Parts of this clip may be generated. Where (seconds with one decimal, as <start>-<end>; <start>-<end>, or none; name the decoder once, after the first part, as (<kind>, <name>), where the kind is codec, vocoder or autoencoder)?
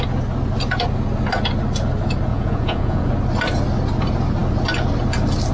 2.3-3.1 (vocoder, Vocos)